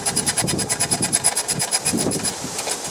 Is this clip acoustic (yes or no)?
no